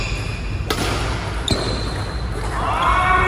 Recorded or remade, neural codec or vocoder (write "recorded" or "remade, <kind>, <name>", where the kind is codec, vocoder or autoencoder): recorded